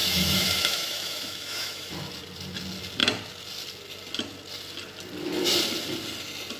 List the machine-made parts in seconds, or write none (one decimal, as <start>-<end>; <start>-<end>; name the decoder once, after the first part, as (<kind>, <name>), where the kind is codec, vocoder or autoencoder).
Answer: 0.0-1.9 (autoencoder, DAC-VAE)